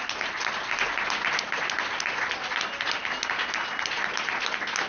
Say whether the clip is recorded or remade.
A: recorded